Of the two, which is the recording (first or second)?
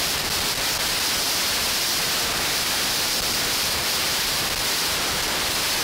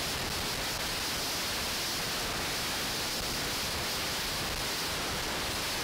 second